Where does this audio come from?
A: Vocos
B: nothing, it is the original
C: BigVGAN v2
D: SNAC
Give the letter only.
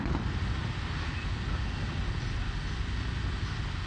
B